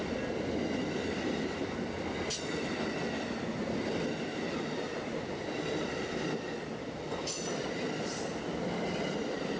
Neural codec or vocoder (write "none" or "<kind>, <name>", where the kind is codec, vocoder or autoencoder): none